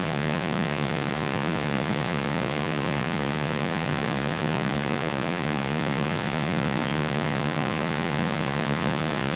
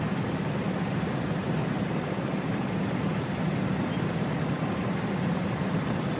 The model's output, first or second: first